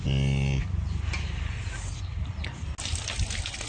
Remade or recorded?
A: recorded